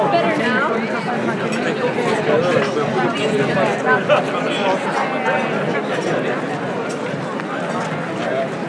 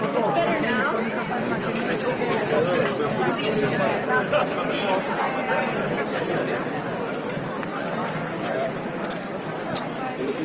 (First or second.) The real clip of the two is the first